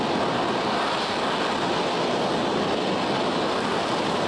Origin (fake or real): real